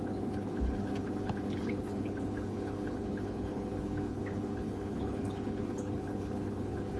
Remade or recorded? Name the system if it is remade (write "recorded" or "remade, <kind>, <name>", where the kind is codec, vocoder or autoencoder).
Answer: remade, codec, HILCodec